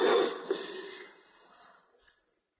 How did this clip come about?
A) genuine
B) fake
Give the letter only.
A